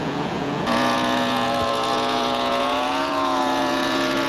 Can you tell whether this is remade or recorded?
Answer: remade